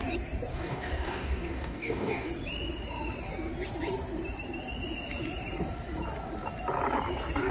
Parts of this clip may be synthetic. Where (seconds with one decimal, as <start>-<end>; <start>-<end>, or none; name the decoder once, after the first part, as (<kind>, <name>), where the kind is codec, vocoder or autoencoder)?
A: 0.5-2.3 (codec, DAC)